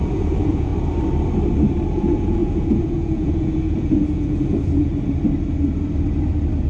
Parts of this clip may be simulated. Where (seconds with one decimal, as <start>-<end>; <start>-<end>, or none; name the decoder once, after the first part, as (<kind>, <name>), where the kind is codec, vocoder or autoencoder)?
0.0-0.7 (vocoder, Vocos); 1.9-4.9